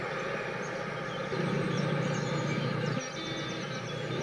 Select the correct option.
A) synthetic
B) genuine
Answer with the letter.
B